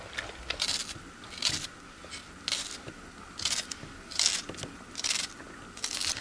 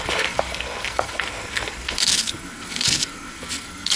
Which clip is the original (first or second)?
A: first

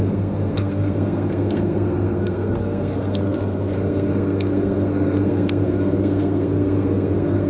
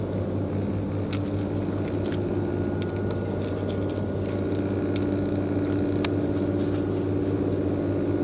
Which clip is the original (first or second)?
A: second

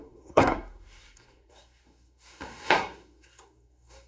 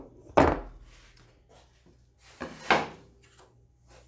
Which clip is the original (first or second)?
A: second